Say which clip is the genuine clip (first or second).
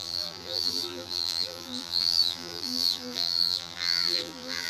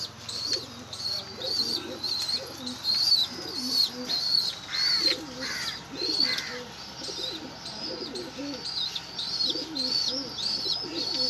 second